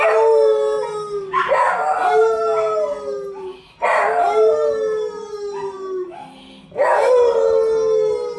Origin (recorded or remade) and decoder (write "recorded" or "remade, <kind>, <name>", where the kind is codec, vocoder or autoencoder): recorded